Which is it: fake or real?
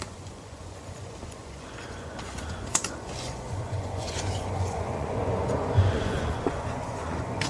fake